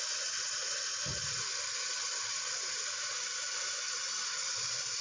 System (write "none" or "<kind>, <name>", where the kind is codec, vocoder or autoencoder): none